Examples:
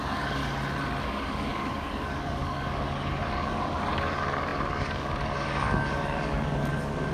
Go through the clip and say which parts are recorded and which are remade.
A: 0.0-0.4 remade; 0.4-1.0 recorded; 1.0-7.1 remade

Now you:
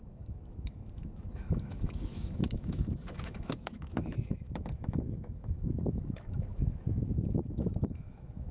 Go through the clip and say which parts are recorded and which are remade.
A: 0.0-8.5 remade

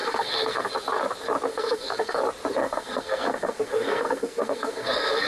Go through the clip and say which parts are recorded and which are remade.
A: 0.0-0.7 remade; 0.7-1.5 recorded; 1.5-2.2 remade; 2.2-2.6 recorded; 2.6-5.3 remade

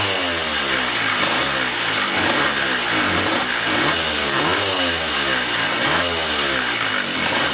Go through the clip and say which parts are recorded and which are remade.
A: 0.0-4.2 recorded; 4.2-5.1 remade; 5.1-7.5 recorded

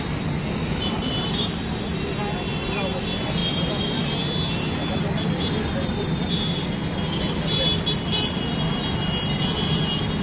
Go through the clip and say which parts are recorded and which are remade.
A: 0.0-10.2 recorded

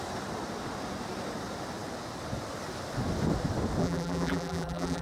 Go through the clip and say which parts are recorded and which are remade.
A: 0.0-3.8 recorded; 3.8-5.0 remade

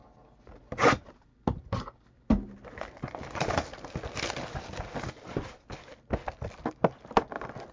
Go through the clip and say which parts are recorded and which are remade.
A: 0.0-7.7 recorded